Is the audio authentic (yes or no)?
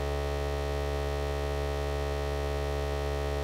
yes